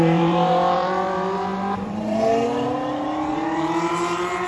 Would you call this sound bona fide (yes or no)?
no